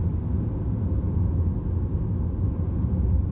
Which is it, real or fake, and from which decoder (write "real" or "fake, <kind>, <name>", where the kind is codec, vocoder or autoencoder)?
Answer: real